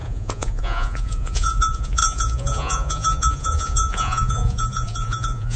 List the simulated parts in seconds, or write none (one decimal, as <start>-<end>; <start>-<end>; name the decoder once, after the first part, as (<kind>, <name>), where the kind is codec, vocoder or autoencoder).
0.0-5.6 (vocoder, Vocos)